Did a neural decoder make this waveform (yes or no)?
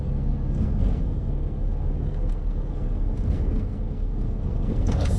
yes